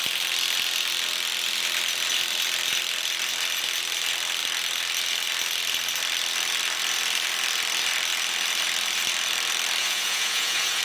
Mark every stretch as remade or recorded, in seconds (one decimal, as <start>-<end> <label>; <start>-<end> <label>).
0.0-9.8 recorded; 9.8-10.8 remade